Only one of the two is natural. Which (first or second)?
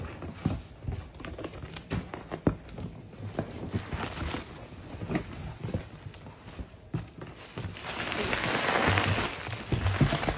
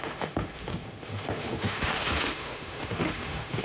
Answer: first